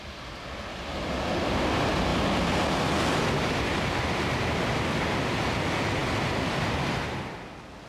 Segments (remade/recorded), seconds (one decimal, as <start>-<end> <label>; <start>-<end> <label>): 0.0-7.9 recorded